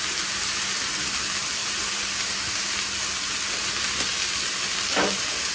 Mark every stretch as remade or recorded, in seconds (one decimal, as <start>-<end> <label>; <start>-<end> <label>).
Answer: 0.0-5.5 recorded